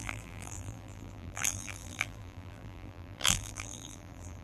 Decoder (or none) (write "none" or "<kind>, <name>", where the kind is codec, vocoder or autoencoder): vocoder, BigVGAN v2